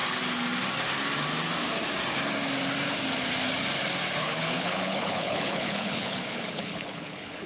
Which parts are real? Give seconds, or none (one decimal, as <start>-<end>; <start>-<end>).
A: 0.0-4.2